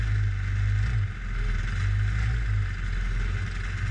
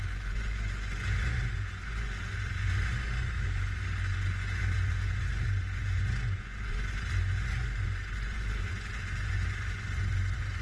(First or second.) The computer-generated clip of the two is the second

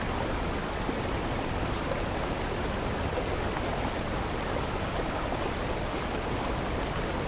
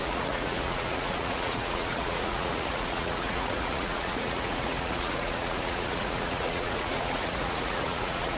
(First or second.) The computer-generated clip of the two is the second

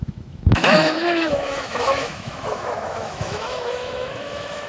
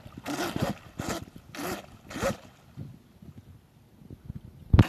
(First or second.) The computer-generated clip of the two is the first